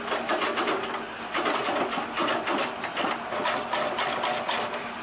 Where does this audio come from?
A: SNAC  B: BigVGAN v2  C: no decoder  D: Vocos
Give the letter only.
C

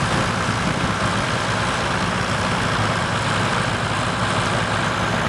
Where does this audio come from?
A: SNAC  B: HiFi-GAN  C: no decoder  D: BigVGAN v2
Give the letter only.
C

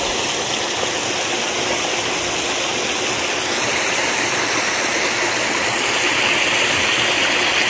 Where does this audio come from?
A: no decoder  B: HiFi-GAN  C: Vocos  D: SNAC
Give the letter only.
A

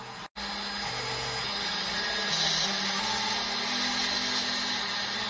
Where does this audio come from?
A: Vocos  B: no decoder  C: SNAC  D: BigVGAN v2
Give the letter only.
B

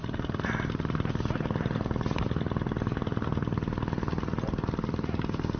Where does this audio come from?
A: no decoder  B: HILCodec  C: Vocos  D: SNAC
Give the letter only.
A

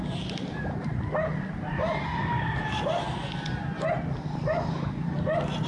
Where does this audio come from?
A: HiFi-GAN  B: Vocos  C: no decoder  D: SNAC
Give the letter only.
C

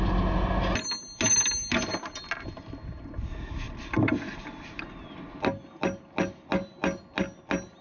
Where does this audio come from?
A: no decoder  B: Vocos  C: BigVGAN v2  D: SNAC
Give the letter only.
A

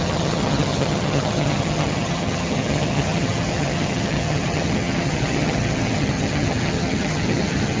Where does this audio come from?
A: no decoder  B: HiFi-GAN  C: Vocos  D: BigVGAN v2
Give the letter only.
B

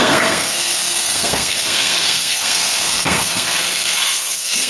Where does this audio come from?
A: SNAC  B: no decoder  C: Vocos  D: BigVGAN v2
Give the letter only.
A